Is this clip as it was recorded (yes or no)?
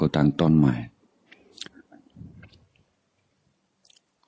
yes